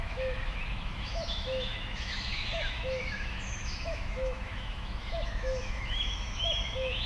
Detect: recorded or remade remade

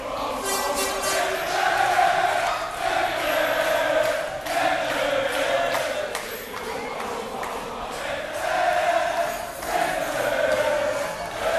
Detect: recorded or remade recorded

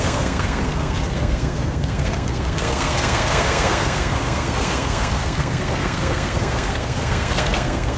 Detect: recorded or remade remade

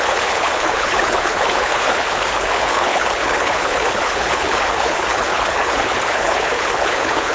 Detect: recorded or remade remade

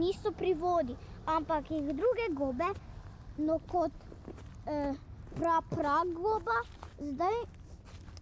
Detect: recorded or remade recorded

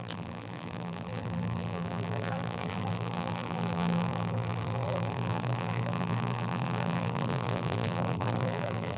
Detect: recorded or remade remade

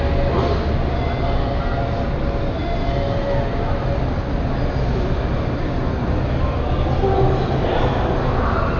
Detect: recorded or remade recorded